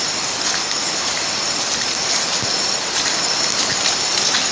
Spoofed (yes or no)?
no